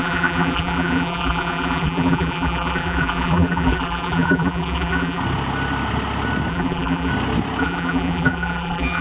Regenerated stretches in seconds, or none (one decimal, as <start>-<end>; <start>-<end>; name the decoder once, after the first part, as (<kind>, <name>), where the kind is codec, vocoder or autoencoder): 0.0-5.2 (vocoder, BigVGAN v2); 6.5-7.1; 7.6-9.0